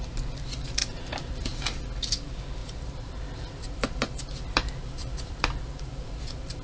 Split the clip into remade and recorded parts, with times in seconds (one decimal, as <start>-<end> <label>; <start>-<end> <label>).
0.0-0.8 recorded; 0.8-1.8 remade; 1.8-2.6 recorded; 2.6-5.6 remade; 5.6-6.6 recorded